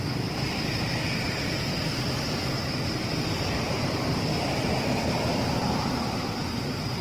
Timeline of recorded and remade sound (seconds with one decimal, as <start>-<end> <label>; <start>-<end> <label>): 0.0-1.7 recorded; 1.7-5.9 remade; 5.9-7.0 recorded